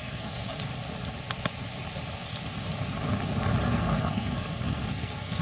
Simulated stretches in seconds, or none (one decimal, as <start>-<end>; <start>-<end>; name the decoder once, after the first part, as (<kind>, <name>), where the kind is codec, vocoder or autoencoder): 0.0-0.4 (codec, SNAC); 3.6-5.4

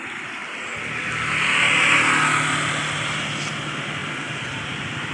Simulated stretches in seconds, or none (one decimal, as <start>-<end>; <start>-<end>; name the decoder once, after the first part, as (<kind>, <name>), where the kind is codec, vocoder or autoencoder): none

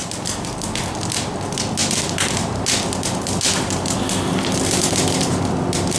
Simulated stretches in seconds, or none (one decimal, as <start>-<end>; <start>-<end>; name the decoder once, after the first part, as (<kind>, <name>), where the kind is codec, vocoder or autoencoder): none

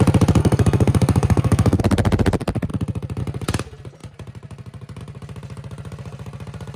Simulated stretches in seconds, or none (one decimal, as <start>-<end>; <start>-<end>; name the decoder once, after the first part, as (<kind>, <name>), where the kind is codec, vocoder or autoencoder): 0.4-1.8 (codec, SNAC)